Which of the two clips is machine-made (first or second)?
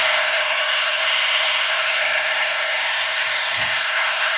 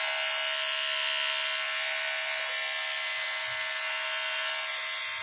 first